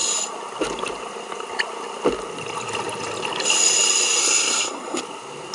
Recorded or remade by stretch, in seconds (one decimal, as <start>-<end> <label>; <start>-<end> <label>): 0.0-4.2 recorded; 4.2-5.0 remade; 5.0-5.5 recorded